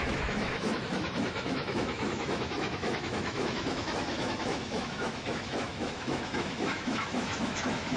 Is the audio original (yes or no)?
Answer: no